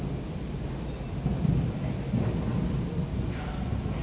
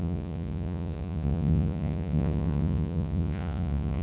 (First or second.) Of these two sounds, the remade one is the second